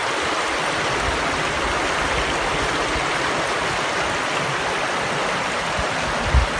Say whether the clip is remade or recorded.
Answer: recorded